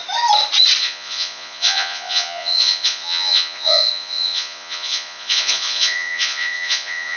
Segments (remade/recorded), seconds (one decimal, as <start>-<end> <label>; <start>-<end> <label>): 0.0-0.8 recorded; 0.8-7.2 remade